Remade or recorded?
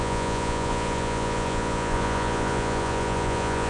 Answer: remade